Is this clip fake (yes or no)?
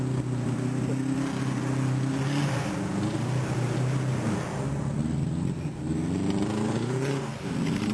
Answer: no